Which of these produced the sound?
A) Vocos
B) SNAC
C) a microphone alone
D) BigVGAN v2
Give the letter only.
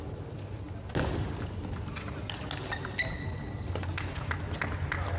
C